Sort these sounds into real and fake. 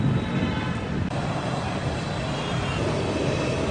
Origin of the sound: real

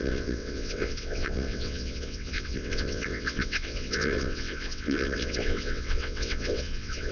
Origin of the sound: fake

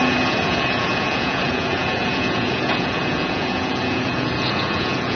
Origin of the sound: fake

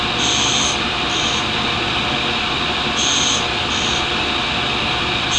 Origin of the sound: real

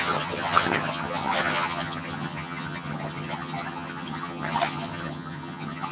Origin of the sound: fake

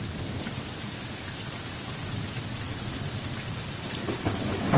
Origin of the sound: fake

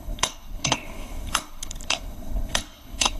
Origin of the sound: fake